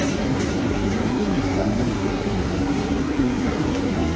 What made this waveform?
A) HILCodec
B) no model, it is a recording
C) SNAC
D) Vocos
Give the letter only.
C